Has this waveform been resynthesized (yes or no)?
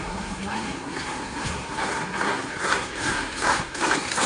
yes